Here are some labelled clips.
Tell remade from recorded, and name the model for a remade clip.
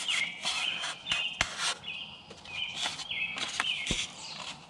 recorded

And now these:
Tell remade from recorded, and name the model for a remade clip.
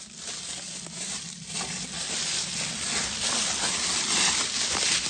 recorded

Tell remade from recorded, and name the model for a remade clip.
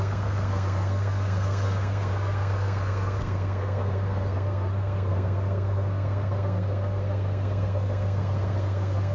remade, codec, SNAC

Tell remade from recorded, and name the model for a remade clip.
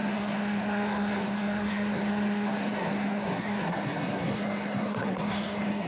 remade, codec, SNAC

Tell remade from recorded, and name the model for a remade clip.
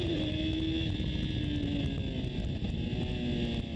recorded